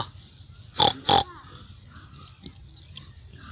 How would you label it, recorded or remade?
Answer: recorded